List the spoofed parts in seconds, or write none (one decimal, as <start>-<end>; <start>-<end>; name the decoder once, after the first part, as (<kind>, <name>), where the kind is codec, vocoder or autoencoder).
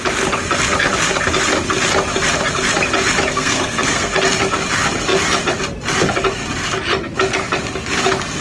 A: 3.3-4.1 (codec, SNAC)